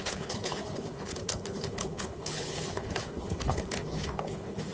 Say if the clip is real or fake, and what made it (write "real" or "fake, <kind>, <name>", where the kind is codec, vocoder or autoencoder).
fake, codec, HILCodec